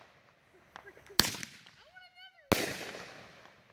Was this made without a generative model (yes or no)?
yes